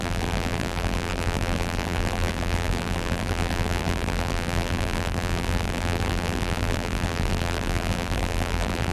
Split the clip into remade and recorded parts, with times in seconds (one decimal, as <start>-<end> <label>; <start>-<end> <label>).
0.0-8.9 remade